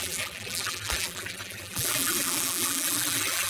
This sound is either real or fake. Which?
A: fake